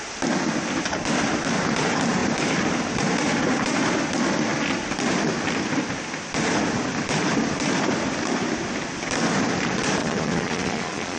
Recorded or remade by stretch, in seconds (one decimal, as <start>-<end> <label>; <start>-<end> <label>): 0.0-10.0 recorded; 10.0-11.2 remade